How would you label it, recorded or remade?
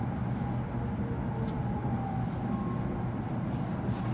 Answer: recorded